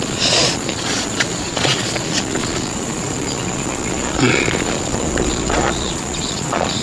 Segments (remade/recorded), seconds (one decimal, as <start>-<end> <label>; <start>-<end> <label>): 0.0-6.8 remade